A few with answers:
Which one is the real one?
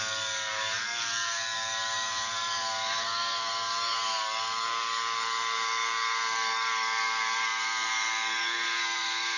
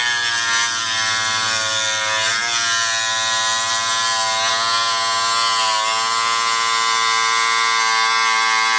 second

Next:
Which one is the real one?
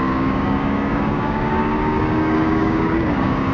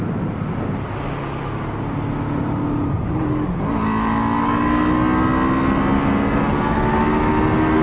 second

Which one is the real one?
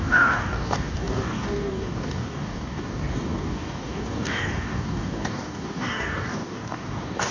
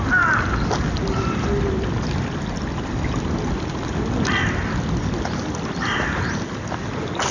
second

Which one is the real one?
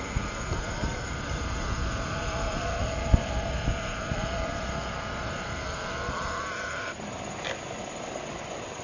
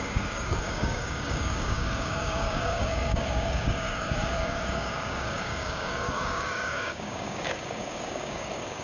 first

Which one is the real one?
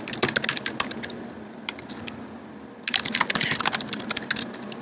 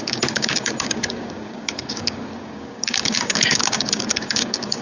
first